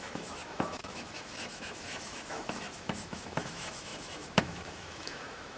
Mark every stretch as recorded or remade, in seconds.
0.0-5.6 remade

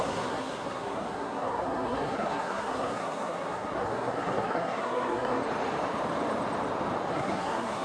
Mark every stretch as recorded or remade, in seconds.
0.0-5.4 remade; 5.4-7.1 recorded; 7.1-7.8 remade

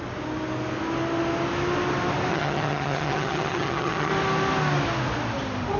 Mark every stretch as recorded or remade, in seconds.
0.0-2.3 recorded; 2.3-4.1 remade; 4.1-5.8 recorded

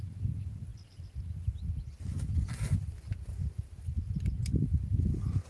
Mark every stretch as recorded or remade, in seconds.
0.0-5.5 recorded

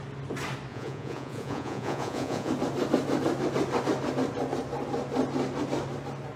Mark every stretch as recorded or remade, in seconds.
0.0-0.7 recorded; 0.7-2.5 remade; 2.5-6.4 recorded

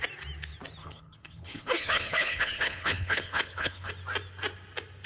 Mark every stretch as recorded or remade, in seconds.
0.0-0.8 recorded; 0.8-3.9 remade; 3.9-5.1 recorded

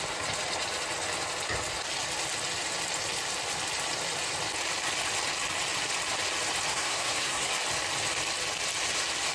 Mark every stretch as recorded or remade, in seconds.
0.0-6.7 recorded; 6.7-7.5 remade; 7.5-9.3 recorded